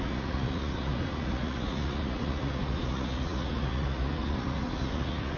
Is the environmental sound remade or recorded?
remade